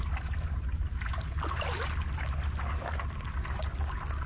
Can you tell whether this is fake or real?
real